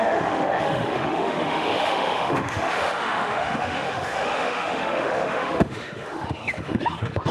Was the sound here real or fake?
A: fake